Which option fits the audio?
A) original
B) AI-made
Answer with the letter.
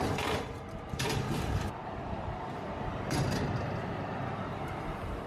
B